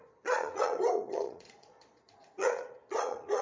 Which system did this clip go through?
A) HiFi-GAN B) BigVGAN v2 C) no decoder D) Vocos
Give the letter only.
D